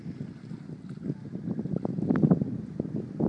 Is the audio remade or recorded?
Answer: recorded